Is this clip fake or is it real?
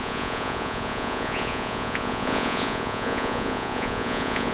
fake